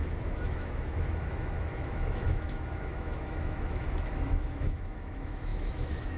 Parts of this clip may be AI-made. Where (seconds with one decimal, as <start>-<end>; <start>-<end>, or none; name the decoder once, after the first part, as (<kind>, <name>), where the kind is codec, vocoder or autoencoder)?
0.0-6.2 (autoencoder, DAC-VAE)